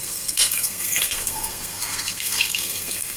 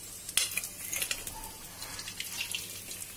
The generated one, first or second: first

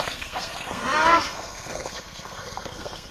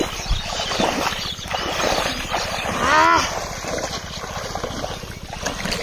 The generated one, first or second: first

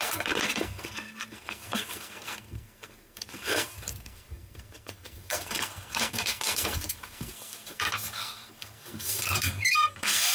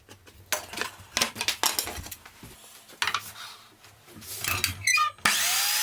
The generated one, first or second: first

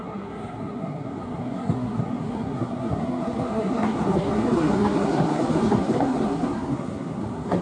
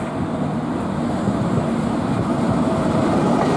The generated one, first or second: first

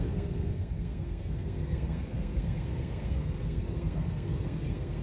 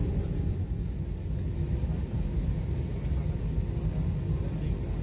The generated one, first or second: first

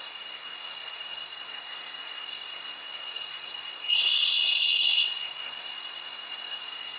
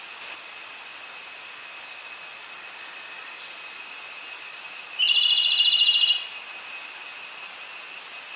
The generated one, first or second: first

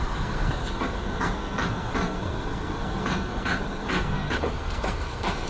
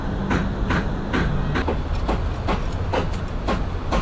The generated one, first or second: first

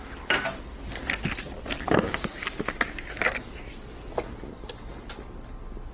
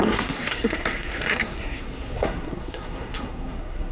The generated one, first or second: second